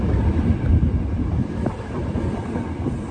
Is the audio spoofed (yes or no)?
yes